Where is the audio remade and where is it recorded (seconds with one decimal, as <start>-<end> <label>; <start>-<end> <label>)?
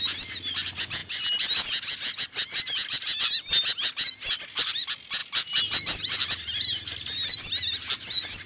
0.0-8.5 recorded